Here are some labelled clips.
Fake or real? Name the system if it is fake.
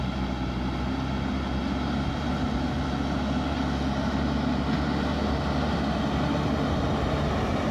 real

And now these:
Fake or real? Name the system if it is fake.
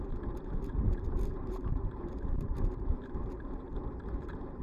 fake, vocoder, BigVGAN v2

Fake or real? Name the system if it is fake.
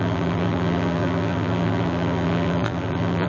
fake, vocoder, BigVGAN v2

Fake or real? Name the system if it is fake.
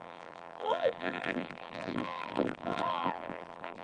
fake, vocoder, BigVGAN v2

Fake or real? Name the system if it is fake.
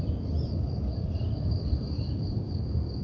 fake, vocoder, BigVGAN v2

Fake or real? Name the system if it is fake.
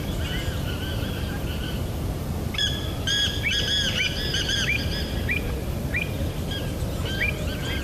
fake, vocoder, BigVGAN v2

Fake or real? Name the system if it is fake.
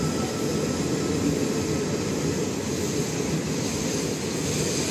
real